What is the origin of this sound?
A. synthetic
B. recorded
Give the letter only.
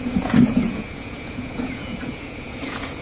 A